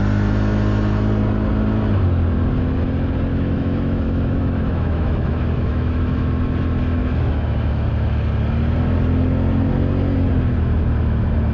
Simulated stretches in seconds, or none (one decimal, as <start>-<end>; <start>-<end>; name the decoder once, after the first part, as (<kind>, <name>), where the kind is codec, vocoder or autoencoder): 3.3-6.3 (autoencoder, DAC-VAE); 7.0-7.9